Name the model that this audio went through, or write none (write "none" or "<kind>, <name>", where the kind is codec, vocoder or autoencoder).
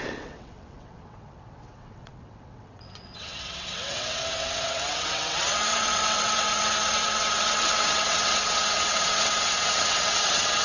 vocoder, WaveNeXt